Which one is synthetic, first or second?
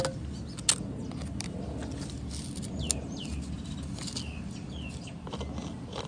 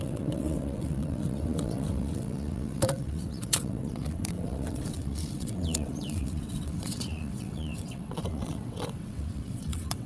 second